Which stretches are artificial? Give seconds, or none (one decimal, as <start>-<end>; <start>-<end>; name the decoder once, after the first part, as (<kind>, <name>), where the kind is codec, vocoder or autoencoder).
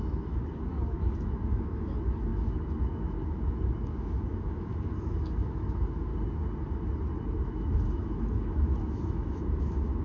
0.0-6.1 (autoencoder, DAC-VAE); 7.3-10.0